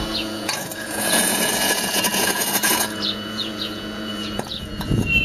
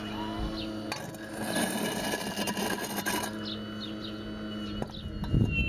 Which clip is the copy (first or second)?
first